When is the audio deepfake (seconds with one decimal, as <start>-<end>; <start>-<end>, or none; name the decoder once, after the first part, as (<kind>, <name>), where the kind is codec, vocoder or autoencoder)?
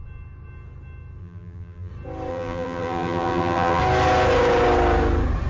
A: 1.2-1.9 (vocoder, BigVGAN v2); 2.3-3.8